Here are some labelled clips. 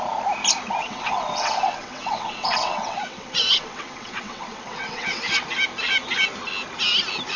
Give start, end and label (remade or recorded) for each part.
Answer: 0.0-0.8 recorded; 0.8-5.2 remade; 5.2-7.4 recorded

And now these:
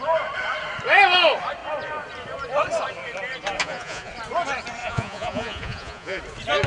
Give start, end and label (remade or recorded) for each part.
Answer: 0.0-3.6 recorded; 3.6-4.1 remade; 4.1-4.8 recorded; 4.8-6.2 remade; 6.2-6.7 recorded